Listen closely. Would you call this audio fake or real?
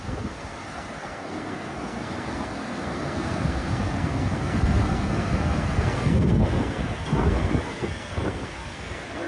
fake